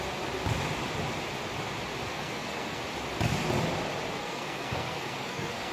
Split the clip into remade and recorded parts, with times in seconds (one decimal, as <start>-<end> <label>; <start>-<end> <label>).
0.0-2.1 recorded; 2.1-2.8 remade; 2.8-4.2 recorded; 4.2-5.7 remade